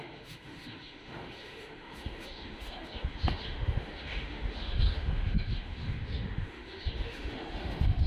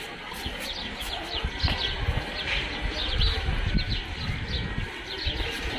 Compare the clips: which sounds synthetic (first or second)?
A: first